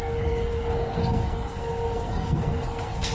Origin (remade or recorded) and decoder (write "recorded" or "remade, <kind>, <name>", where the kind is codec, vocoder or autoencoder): remade, codec, SNAC